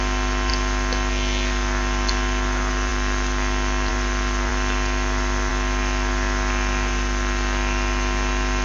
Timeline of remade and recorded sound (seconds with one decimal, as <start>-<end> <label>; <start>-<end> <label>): 0.0-8.6 recorded